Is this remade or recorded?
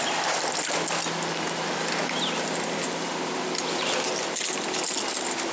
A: recorded